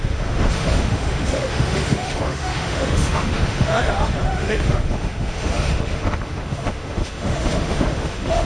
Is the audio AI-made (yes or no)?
yes